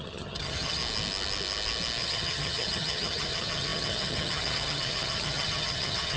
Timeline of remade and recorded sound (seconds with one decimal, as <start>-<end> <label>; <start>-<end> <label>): 0.0-0.8 remade; 0.8-2.0 recorded; 2.0-6.2 remade